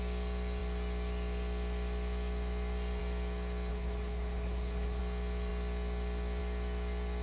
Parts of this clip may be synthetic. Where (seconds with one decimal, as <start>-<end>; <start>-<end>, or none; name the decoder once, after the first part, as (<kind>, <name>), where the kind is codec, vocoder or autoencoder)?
3.7-5.0 (codec, HILCodec)

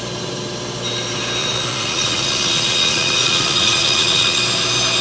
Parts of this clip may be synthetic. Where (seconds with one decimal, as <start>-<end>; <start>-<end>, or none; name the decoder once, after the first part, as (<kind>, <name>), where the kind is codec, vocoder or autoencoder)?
1.4-4.4 (vocoder, Vocos)